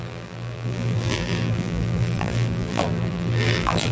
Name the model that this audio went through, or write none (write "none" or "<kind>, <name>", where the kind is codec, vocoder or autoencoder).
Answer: vocoder, BigVGAN v2